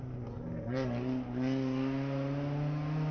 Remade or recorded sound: recorded